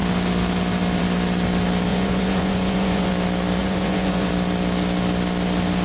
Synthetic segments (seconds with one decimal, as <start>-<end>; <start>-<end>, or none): 1.9-3.1; 3.6-4.3